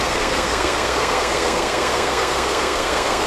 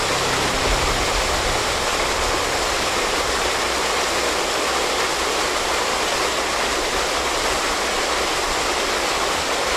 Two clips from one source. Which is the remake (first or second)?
first